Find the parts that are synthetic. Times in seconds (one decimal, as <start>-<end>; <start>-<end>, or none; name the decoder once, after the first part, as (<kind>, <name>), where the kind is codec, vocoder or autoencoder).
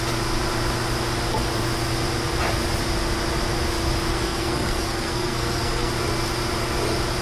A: 4.1-5.9 (codec, SNAC)